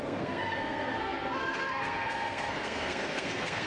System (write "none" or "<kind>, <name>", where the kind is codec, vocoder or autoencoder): codec, SNAC